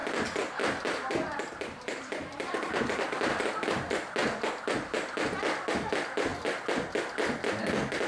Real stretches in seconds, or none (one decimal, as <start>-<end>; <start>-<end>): 0.0-1.5; 4.2-5.7; 6.3-8.1